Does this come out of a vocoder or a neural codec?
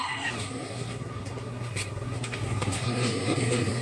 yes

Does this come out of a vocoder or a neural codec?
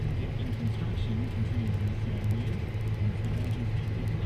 no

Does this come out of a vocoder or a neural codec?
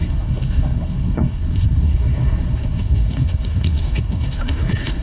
yes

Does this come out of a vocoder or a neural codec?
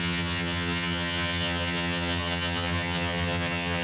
yes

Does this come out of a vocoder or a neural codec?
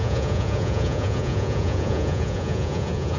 yes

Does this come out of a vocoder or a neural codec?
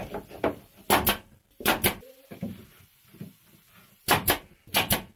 no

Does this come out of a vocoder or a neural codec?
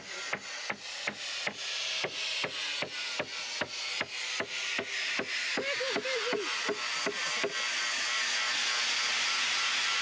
no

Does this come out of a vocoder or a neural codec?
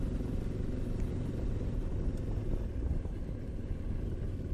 no